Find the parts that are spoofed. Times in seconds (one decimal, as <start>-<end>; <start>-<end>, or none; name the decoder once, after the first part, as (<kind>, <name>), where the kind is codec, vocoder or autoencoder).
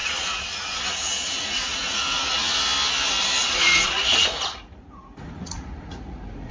0.0-2.6 (vocoder, Vocos); 3.4-6.5